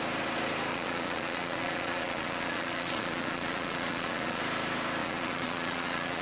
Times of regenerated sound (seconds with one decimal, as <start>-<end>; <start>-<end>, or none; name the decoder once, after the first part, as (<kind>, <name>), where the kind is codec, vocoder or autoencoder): 0.7-4.4 (vocoder, Vocos); 5.0-6.2